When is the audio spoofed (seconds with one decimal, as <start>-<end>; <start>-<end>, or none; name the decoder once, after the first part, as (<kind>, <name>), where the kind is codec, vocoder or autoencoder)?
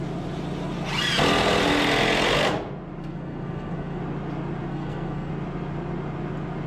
3.0-4.0 (codec, SNAC); 4.7-5.3